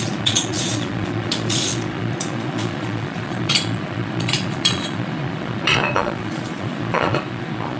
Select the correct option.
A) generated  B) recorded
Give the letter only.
A